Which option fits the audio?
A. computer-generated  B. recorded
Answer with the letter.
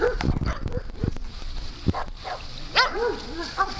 B